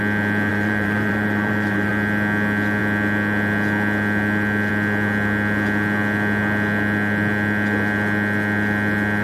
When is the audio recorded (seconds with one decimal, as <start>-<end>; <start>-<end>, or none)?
0.0-0.5; 1.9-9.2